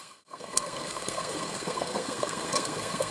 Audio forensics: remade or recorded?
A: remade